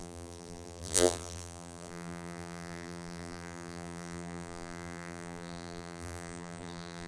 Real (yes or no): no